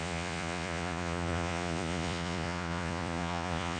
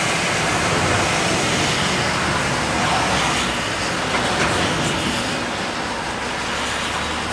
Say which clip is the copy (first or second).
first